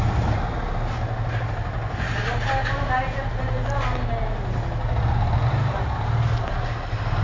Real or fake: real